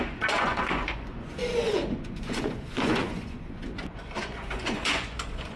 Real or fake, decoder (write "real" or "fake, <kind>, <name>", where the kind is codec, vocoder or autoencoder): fake, vocoder, Vocos